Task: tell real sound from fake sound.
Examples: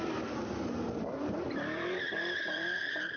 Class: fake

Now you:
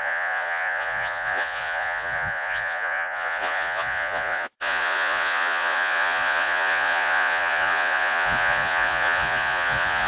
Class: fake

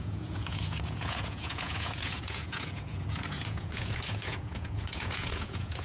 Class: fake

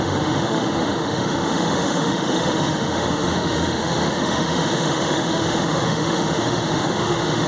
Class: fake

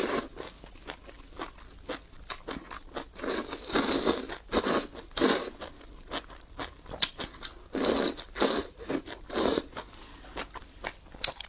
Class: real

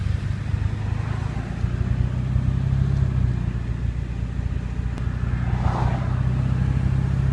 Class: real